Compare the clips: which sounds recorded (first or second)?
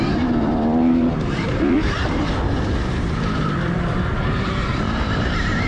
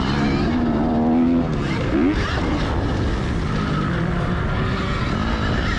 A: second